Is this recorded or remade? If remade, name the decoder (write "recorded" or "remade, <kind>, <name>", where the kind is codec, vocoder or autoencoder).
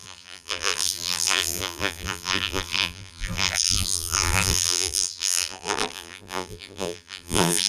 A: remade, vocoder, BigVGAN v2